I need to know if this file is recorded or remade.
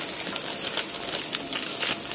recorded